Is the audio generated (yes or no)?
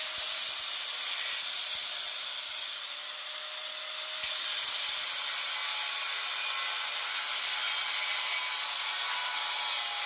no